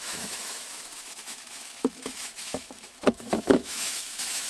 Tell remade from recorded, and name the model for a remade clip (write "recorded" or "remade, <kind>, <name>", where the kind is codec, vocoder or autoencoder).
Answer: remade, autoencoder, DAC-VAE